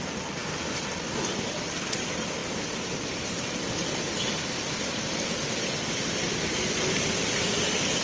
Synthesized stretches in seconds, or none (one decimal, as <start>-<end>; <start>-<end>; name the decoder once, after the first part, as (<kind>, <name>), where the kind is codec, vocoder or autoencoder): none